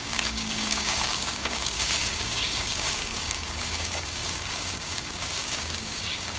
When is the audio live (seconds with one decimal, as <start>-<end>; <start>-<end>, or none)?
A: none